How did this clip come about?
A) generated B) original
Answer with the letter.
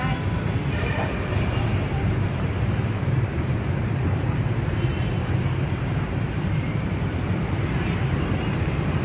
A